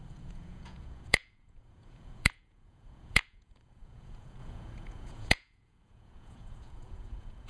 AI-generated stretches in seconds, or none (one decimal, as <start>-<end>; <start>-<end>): 0.0-7.5